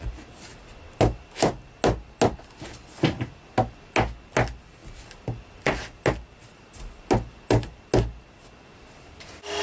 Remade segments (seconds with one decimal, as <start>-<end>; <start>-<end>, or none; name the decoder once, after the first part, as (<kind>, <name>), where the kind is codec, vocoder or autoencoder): none

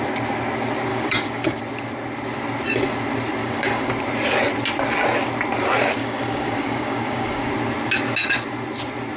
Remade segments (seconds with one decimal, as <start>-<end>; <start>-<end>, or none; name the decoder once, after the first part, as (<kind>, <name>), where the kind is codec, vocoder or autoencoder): 0.9-1.6 (codec, DAC); 3.4-3.9; 6.0-7.5